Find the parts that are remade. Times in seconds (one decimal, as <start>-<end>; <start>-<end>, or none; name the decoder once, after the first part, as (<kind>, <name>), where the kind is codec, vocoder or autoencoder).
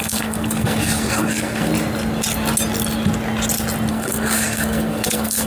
0.0-1.7 (codec, SNAC); 3.9-5.5